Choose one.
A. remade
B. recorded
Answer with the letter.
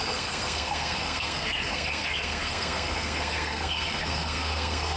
A